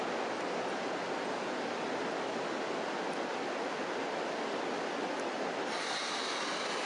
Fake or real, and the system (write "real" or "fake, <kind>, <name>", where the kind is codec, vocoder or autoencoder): real